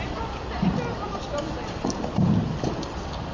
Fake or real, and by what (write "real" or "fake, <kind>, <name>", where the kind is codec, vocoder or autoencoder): real